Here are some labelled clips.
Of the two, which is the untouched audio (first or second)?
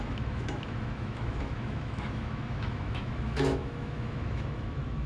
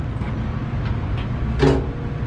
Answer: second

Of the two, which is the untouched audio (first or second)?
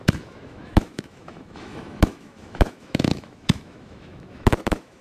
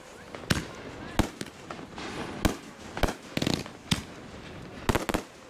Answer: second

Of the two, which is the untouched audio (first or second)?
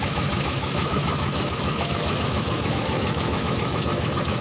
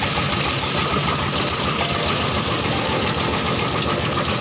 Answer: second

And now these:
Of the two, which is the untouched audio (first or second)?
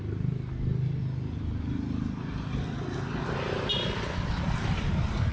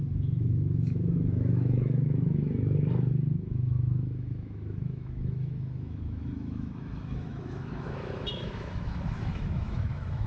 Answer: first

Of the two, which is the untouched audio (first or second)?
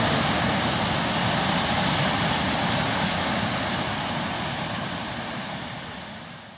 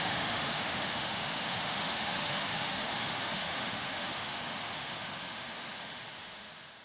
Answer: first